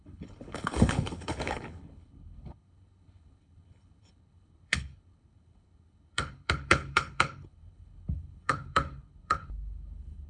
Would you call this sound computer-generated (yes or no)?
yes